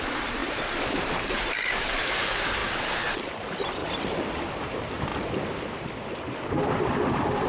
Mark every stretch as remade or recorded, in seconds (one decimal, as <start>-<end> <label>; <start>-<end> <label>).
0.0-3.8 remade; 3.8-4.6 recorded; 4.6-5.1 remade; 5.1-7.1 recorded; 7.1-7.5 remade